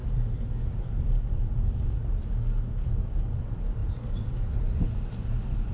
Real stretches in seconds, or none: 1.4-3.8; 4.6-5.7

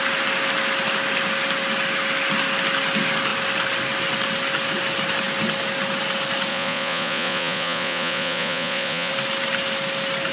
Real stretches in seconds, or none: 0.0-6.5; 9.1-10.3

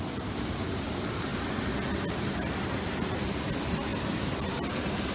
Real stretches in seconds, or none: 0.0-5.1

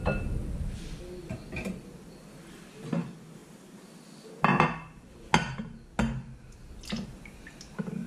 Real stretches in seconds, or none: 0.0-3.4; 3.9-8.1

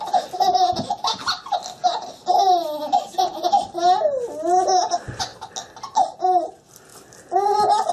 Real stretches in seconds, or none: 0.0-7.9

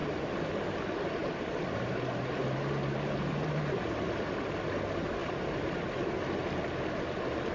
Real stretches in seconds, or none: 0.6-1.2; 4.1-5.2; 6.1-7.5

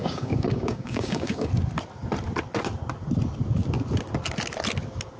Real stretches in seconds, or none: 1.5-5.2